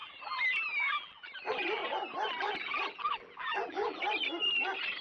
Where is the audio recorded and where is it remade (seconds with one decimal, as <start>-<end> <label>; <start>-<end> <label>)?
0.0-1.8 remade; 1.8-2.4 recorded; 2.4-4.0 remade; 4.0-5.0 recorded